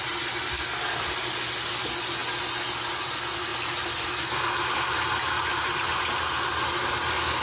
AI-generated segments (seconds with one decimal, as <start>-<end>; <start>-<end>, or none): 3.5-5.0; 5.5-6.0